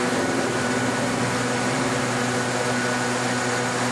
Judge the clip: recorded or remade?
recorded